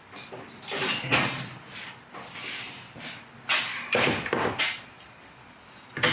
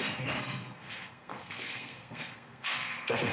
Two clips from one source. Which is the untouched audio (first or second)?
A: first